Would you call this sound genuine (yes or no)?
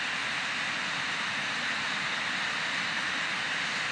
yes